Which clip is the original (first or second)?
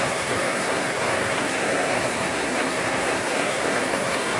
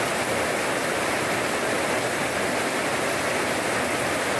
second